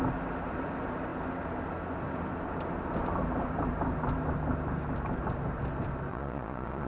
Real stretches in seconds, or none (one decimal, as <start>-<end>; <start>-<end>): 0.0-6.1

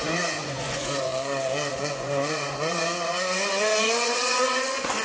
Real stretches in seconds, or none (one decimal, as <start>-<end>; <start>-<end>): 1.1-1.7

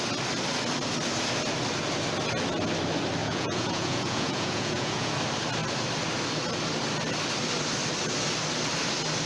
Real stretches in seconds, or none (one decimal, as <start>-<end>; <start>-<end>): 0.0-3.2; 5.1-9.3

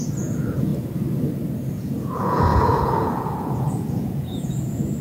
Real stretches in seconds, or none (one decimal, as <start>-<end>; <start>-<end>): 0.7-1.7

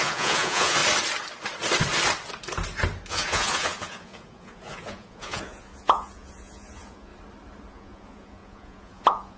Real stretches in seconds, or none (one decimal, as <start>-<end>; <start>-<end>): 0.8-3.1; 7.1-7.7

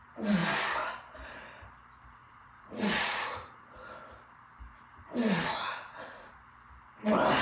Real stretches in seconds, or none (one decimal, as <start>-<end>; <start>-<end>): 0.0-2.2; 3.9-5.2; 6.4-7.4

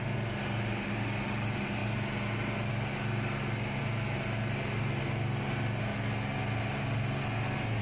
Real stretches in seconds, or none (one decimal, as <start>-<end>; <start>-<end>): 0.0-7.8